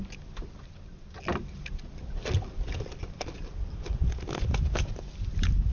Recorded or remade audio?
recorded